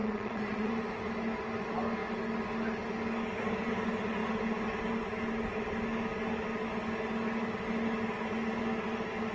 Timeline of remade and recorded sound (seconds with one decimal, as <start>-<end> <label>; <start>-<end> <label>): 0.0-0.7 remade; 0.7-9.3 recorded